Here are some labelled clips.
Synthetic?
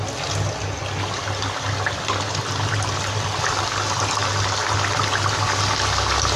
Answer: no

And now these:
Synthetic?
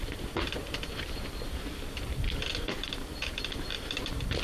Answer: yes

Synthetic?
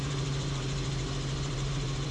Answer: yes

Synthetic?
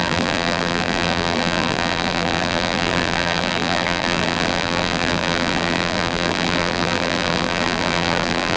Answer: yes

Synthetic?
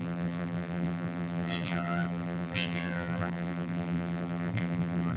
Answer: yes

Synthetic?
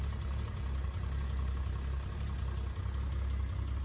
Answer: no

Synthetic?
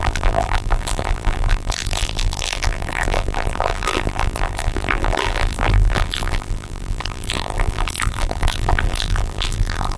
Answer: yes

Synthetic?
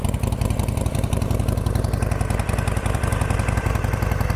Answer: yes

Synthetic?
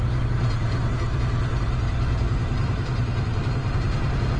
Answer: yes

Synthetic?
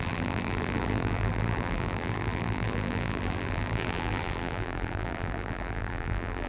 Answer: yes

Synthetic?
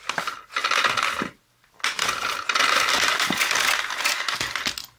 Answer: no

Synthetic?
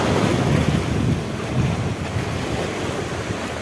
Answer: no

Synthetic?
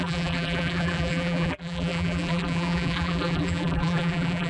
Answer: yes